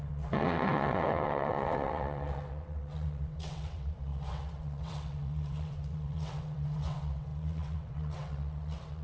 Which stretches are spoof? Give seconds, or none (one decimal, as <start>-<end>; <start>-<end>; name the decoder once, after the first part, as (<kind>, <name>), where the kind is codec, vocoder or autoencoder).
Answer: 0.0-9.0 (vocoder, WaveNeXt)

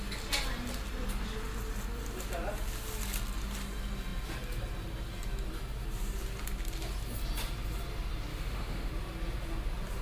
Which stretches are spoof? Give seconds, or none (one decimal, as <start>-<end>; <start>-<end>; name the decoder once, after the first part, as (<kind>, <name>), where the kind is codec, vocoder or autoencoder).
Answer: 8.3-8.9 (autoencoder, DAC-VAE)